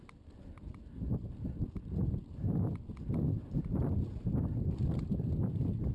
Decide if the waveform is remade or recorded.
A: recorded